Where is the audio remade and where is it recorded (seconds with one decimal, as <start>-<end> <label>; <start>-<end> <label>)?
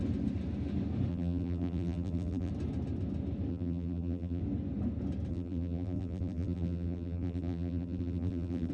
0.0-1.1 recorded; 1.1-2.5 remade; 2.5-3.5 recorded; 3.5-4.4 remade; 4.4-5.3 recorded; 5.3-8.7 remade